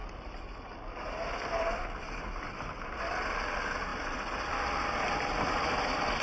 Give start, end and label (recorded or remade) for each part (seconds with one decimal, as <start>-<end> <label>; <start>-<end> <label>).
0.0-6.2 recorded

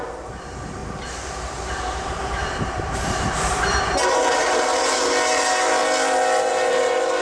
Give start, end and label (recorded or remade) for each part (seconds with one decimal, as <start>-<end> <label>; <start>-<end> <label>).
0.0-5.8 remade; 5.8-6.5 recorded; 6.5-7.2 remade